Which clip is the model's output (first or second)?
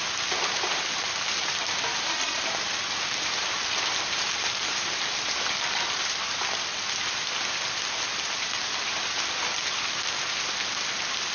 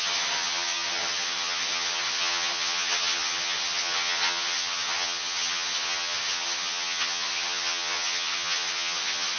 second